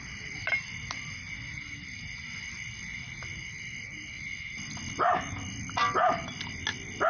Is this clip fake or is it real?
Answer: real